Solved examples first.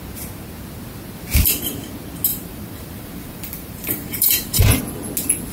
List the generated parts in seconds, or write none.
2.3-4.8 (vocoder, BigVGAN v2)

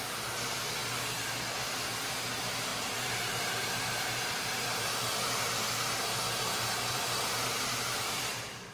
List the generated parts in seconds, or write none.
0.0-0.8 (vocoder, BigVGAN v2); 2.2-8.7

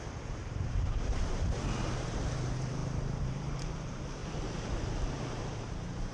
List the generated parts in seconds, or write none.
0.0-4.2 (vocoder, BigVGAN v2); 5.1-6.1

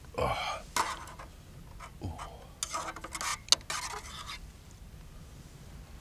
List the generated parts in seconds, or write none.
none